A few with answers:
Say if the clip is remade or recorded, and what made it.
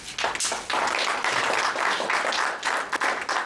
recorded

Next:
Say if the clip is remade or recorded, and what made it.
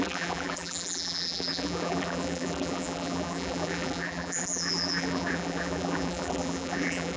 remade, vocoder, BigVGAN v2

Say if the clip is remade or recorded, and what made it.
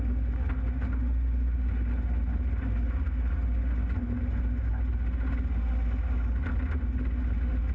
recorded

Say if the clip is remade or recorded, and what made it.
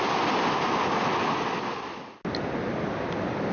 recorded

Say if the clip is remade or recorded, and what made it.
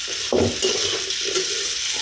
recorded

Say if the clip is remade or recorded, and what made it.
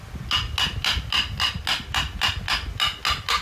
recorded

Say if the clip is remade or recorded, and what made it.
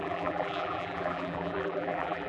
remade, vocoder, BigVGAN v2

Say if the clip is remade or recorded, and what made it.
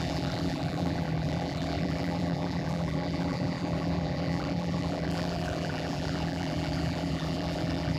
remade, vocoder, BigVGAN v2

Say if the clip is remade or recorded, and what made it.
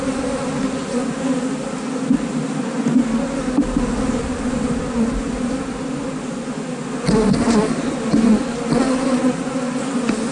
recorded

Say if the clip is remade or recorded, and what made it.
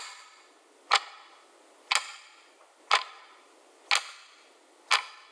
recorded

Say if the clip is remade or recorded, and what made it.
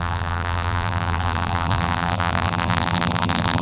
remade, vocoder, BigVGAN v2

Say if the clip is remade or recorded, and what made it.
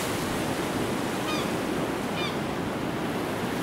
recorded